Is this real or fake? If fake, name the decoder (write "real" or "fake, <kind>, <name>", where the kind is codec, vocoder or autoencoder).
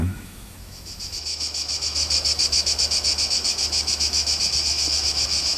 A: fake, autoencoder, DAC-VAE